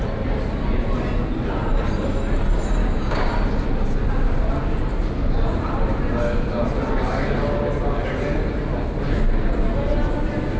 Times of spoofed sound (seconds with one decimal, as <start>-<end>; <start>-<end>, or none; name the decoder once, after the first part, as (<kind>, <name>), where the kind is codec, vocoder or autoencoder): 2.8-3.3 (codec, DAC)